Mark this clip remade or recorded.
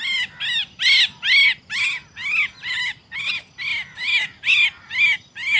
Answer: recorded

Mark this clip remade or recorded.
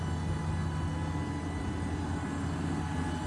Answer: recorded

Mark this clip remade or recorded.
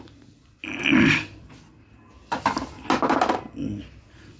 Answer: recorded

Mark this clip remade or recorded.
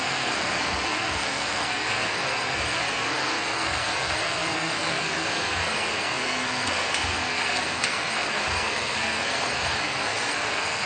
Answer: remade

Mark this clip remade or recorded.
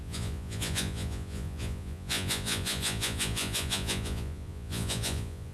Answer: remade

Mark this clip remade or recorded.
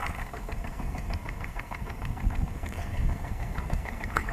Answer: remade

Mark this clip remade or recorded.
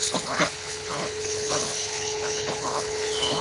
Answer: remade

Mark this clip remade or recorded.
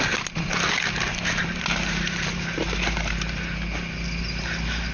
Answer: recorded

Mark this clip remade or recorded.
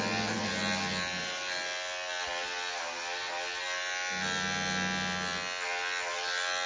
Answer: recorded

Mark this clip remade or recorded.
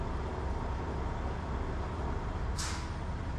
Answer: recorded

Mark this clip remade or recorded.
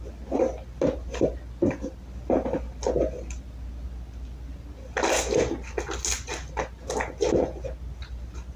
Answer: recorded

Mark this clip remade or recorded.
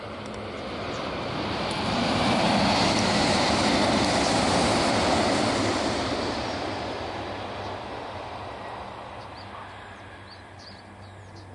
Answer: recorded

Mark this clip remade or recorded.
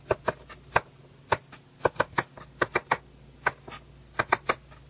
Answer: recorded